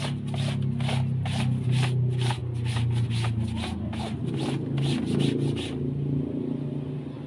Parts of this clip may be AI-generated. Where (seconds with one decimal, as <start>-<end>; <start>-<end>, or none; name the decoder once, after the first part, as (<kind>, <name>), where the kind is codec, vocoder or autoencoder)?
none